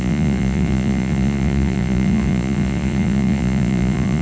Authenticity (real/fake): fake